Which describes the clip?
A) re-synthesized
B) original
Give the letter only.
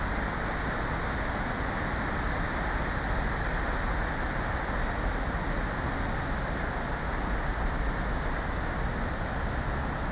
B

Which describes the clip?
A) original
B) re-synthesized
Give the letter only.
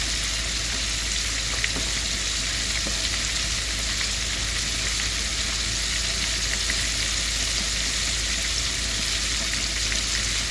A